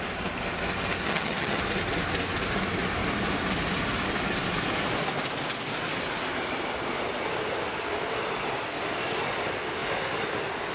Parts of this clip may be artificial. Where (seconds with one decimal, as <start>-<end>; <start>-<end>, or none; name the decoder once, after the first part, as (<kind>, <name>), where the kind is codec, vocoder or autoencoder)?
1.0-1.6 (vocoder, HiFi-GAN)